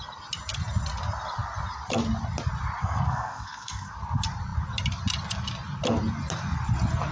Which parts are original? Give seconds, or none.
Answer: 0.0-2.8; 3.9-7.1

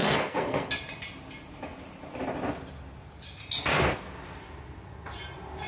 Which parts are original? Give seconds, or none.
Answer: 0.7-5.7

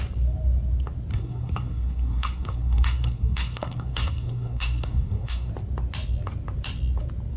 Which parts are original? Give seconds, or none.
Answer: 0.0-1.1; 5.5-7.4